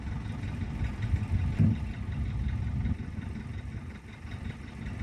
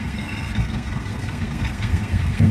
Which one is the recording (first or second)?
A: first